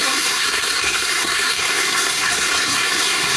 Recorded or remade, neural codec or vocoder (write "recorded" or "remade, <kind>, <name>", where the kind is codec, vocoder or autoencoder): remade, codec, SNAC